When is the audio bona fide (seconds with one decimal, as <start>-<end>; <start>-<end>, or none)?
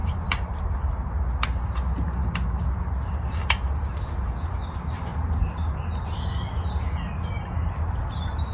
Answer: 1.1-8.5